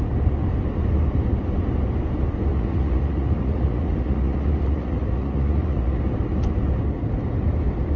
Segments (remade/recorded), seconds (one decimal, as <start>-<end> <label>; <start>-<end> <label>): 0.0-2.5 recorded; 2.5-6.0 remade; 6.0-8.0 recorded